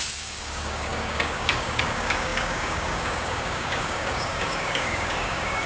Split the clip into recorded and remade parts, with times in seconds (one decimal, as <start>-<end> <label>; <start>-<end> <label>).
0.0-5.7 remade